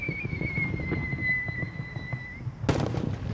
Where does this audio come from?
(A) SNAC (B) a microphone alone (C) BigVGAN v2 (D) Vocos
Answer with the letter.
B